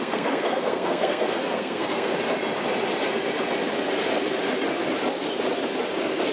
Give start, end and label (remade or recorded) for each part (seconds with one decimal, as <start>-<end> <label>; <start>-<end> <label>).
0.0-2.1 remade; 2.1-6.3 recorded